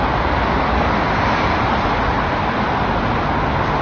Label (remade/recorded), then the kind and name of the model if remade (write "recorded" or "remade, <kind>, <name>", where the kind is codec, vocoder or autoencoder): recorded